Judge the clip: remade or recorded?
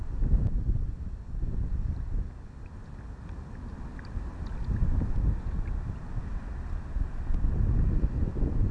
recorded